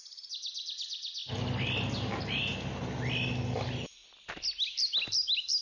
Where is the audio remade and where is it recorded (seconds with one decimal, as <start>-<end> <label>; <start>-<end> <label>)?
0.0-5.6 recorded